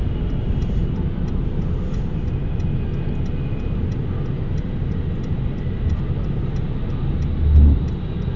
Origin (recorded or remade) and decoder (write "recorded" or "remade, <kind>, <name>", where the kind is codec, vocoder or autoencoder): recorded